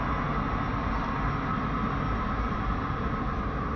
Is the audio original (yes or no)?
yes